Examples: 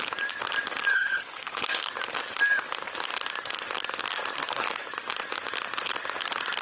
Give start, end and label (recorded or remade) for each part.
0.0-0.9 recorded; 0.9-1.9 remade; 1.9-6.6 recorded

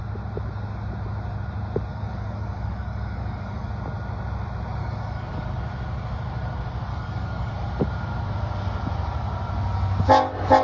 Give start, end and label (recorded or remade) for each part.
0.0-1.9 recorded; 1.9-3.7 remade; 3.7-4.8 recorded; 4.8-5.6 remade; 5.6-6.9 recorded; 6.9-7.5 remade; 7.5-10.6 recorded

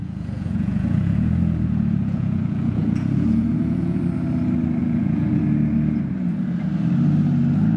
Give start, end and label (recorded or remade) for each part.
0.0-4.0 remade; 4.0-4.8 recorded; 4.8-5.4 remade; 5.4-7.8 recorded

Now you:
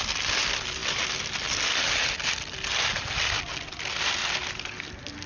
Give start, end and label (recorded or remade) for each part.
0.0-5.3 recorded